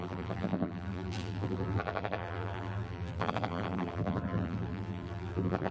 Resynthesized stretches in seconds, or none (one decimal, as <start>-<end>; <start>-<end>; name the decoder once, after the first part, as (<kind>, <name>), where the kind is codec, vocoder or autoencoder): 0.0-5.7 (vocoder, BigVGAN v2)